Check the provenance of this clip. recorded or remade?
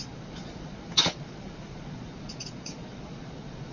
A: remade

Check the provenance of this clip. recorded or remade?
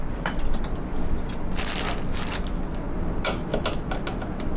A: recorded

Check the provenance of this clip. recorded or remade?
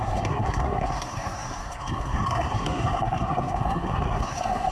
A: remade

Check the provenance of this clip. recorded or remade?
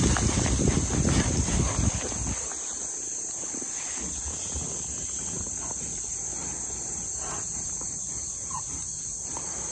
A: recorded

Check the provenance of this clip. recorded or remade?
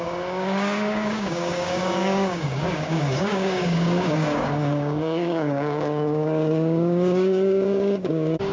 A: remade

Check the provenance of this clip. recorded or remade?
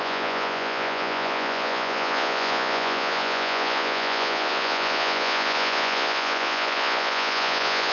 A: remade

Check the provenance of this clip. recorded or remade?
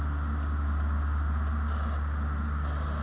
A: recorded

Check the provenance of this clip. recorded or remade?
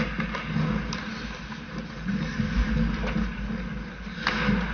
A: recorded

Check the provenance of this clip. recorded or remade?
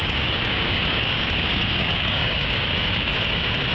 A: remade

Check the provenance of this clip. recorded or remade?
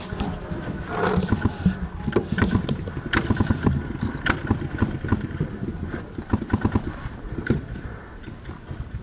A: recorded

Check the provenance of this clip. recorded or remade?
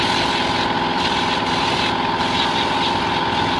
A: recorded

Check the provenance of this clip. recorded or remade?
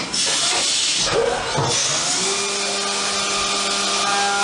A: recorded